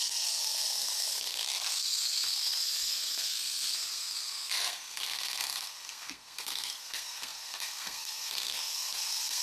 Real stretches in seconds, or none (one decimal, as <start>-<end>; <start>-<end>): none